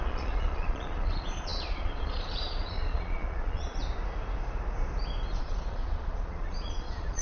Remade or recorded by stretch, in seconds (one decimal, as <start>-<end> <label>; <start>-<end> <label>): 0.0-3.8 remade; 3.8-5.4 recorded; 5.4-7.2 remade